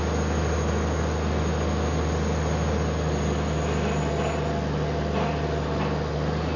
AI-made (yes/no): no